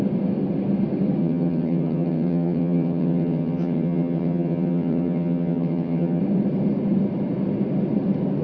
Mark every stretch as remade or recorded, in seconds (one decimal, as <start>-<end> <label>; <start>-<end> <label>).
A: 0.0-1.2 recorded; 1.2-6.2 remade; 6.2-8.4 recorded